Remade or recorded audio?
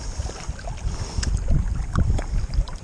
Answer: recorded